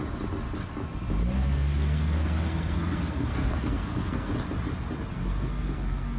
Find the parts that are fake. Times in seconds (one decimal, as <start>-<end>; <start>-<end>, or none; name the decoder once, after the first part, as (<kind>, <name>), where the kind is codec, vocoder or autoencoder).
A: 1.4-4.3 (codec, SNAC); 5.1-6.2

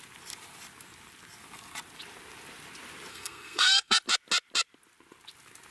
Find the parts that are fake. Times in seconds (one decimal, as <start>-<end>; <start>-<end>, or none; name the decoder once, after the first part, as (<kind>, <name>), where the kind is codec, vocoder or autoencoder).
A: 3.1-4.0 (codec, SNAC)

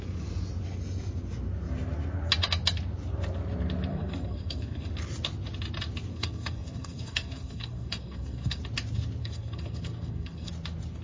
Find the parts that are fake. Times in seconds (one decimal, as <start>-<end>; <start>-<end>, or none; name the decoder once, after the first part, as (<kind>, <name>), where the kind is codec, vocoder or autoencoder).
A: 3.9-4.9 (codec, SNAC); 6.1-8.6; 9.2-10.5

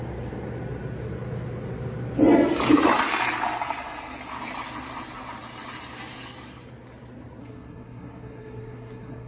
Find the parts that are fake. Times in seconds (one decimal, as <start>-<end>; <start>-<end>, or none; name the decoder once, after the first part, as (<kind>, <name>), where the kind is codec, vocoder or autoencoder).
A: 7.4-9.3 (codec, SNAC)

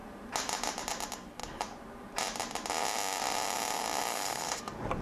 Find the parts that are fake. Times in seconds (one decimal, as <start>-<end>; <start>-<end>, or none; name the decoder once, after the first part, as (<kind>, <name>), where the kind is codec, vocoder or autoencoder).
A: 4.1-4.6 (codec, SNAC)

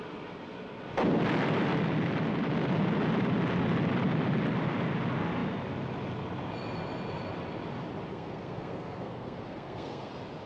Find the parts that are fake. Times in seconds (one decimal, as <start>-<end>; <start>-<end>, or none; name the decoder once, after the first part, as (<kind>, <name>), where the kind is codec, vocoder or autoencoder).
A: 8.1-10.1 (codec, SNAC)

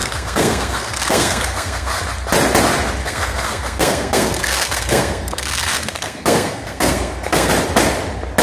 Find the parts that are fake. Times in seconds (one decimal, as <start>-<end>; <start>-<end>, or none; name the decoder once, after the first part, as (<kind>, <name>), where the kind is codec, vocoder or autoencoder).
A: 0.0-2.0 (codec, SNAC); 3.0-7.5